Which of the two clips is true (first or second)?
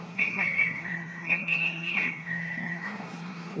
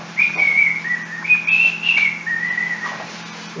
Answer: second